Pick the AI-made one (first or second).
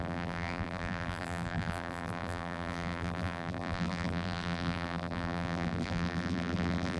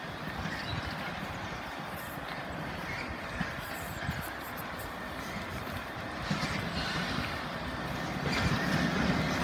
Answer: first